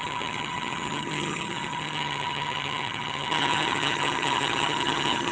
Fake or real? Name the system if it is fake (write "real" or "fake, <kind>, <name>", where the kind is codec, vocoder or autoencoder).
fake, vocoder, HiFi-GAN